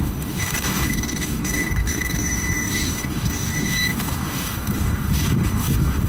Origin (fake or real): fake